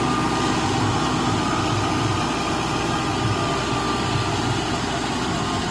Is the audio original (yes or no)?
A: yes